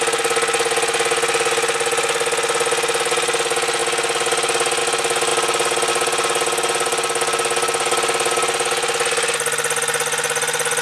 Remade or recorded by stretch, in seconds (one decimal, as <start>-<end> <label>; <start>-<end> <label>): 0.0-10.8 recorded